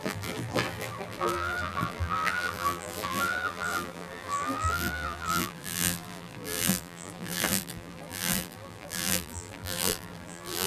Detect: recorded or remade remade